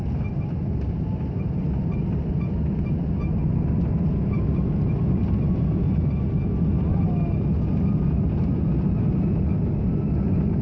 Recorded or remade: recorded